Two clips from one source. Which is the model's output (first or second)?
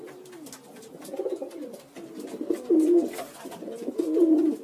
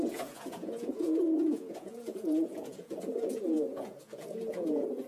second